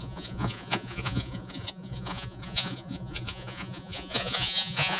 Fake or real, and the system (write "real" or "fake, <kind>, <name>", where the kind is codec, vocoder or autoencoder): fake, vocoder, Vocos